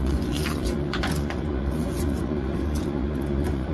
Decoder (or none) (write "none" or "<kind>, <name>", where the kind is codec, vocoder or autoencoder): vocoder, Vocos